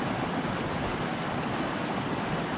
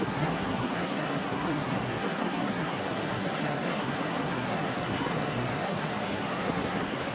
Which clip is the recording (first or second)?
first